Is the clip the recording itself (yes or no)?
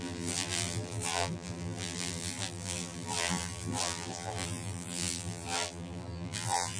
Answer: no